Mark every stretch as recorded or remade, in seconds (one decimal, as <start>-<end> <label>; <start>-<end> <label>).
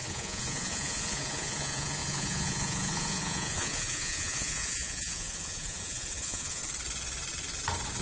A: 0.0-6.6 remade; 6.6-8.0 recorded